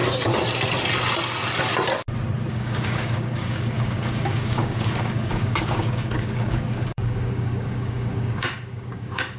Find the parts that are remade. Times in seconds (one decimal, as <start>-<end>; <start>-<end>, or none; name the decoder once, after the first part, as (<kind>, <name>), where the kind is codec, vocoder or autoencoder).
2.5-9.4 (codec, DAC)